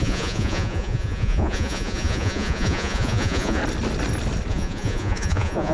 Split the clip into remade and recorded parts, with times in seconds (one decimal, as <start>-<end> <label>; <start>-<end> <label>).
0.0-3.6 remade; 3.6-4.5 recorded; 4.5-5.7 remade